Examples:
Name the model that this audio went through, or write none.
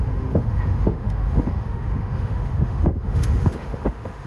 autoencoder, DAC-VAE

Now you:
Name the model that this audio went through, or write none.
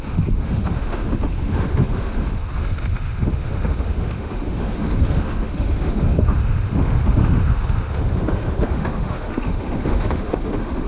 autoencoder, DAC-VAE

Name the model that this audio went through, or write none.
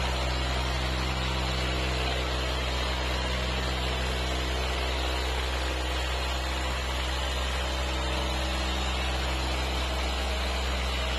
none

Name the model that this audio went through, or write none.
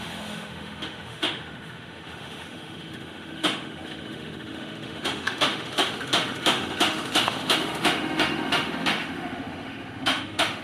autoencoder, DAC-VAE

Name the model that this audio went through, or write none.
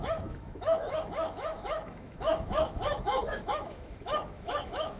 autoencoder, DAC-VAE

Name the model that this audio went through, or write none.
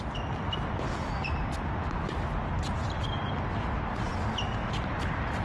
none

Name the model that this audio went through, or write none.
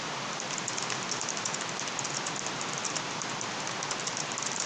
none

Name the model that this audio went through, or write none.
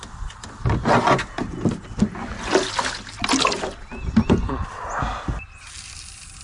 none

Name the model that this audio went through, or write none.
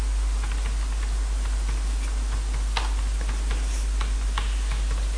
none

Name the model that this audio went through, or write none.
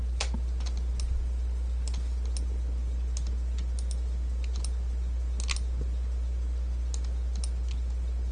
none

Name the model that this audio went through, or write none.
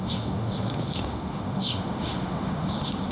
autoencoder, DAC-VAE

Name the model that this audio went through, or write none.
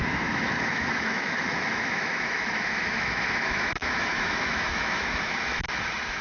autoencoder, DAC-VAE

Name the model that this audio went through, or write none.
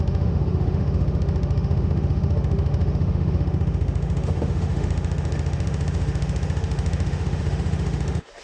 autoencoder, DAC-VAE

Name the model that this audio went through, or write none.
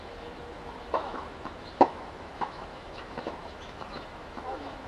autoencoder, DAC-VAE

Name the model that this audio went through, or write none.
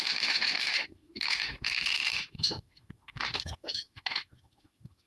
autoencoder, DAC-VAE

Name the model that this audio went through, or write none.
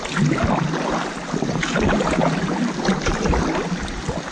none